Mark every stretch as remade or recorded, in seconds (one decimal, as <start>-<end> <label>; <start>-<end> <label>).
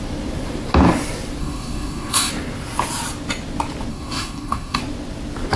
0.0-1.4 recorded; 1.4-2.3 remade; 2.3-3.9 recorded; 3.9-4.8 remade; 4.8-5.6 recorded